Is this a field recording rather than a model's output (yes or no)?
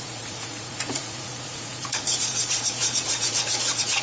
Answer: no